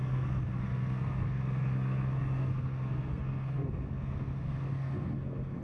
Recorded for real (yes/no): no